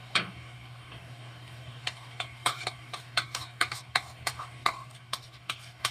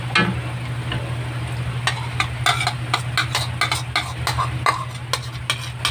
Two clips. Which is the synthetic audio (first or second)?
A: first